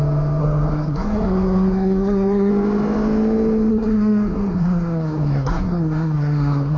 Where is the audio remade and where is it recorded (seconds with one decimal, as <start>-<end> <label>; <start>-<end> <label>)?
0.0-0.4 recorded; 0.4-2.5 remade; 2.5-3.7 recorded; 3.7-6.8 remade